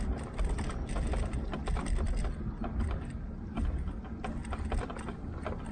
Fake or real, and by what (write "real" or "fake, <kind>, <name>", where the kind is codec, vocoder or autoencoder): real